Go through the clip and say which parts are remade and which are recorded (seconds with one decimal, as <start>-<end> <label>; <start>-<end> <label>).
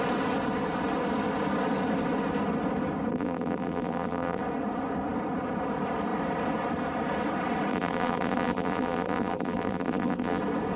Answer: 0.0-3.1 recorded; 3.1-4.4 remade; 4.4-7.7 recorded; 7.7-10.4 remade; 10.4-10.8 recorded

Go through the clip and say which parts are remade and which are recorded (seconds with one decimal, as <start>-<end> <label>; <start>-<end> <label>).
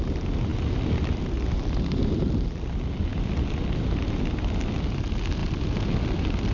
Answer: 0.0-6.5 recorded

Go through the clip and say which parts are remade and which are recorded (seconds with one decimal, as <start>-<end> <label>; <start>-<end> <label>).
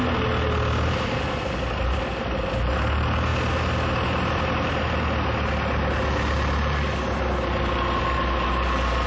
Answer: 0.0-9.1 recorded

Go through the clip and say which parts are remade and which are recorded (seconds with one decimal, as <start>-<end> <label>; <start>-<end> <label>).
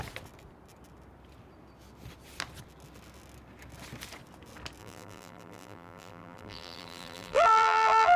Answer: 0.0-4.8 recorded; 4.8-8.2 remade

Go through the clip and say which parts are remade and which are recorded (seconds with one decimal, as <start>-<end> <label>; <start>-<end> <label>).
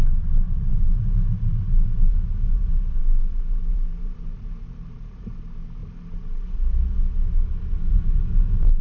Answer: 0.0-0.7 recorded; 0.7-3.0 remade; 3.0-3.7 recorded; 3.7-5.2 remade; 5.2-5.8 recorded; 5.8-7.0 remade; 7.0-7.9 recorded; 7.9-8.8 remade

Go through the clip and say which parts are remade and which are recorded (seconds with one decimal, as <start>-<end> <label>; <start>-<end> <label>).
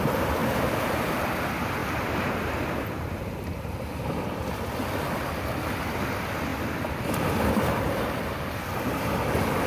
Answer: 0.0-0.4 recorded; 0.4-1.1 remade; 1.1-6.5 recorded; 6.5-8.7 remade; 8.7-9.7 recorded